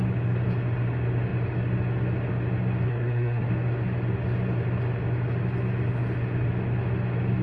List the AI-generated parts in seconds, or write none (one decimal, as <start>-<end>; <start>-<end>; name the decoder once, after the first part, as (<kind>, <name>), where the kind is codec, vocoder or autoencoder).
2.9-3.5 (codec, SNAC)